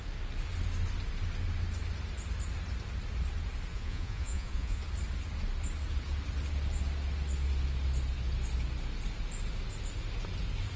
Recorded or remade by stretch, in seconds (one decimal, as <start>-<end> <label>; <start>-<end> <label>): 0.0-3.7 recorded; 3.7-4.8 remade; 4.8-10.8 recorded